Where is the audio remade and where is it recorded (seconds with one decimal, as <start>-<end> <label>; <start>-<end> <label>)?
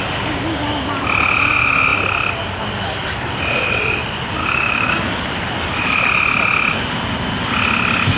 0.0-4.4 recorded; 4.4-5.1 remade; 5.1-8.2 recorded